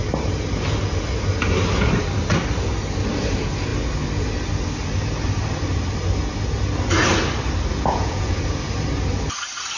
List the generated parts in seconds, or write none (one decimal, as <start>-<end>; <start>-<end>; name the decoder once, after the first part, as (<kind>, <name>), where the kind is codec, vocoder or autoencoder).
7.7-8.4 (vocoder, Vocos)